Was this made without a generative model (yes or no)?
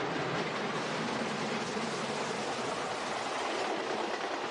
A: yes